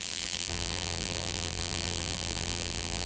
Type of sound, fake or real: fake